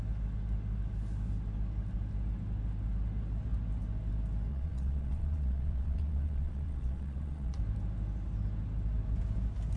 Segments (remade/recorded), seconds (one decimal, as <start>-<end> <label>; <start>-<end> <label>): 0.0-4.5 recorded; 4.5-7.6 remade; 7.6-9.8 recorded